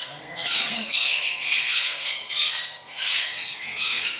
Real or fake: fake